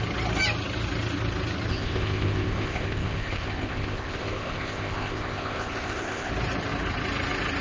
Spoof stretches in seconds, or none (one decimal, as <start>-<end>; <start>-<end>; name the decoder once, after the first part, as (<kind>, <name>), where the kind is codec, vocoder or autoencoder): 1.7-6.3 (codec, ZipCodec)